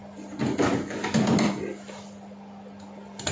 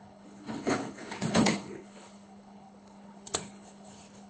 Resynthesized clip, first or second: second